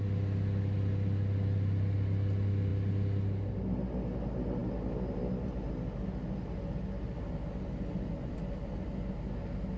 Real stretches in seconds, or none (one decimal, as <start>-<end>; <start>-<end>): 0.0-9.8